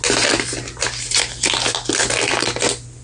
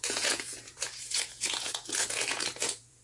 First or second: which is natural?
first